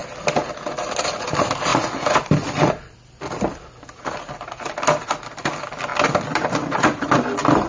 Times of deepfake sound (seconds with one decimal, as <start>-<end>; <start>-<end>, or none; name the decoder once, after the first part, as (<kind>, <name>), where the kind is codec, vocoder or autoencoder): none